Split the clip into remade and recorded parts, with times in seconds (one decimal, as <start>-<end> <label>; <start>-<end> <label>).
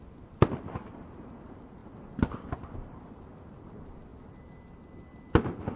0.0-5.8 recorded